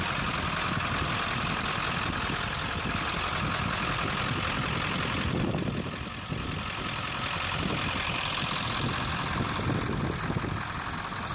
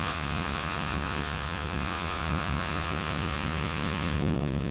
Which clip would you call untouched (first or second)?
first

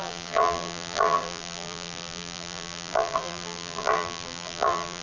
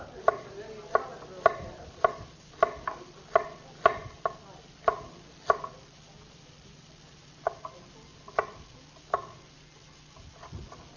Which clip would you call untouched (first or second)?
second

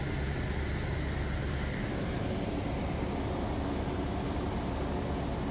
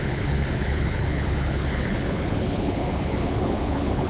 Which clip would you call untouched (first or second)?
first